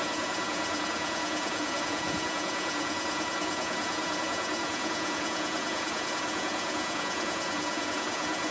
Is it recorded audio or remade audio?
remade